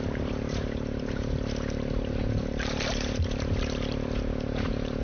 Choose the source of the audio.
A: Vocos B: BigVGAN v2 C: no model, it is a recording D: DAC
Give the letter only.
B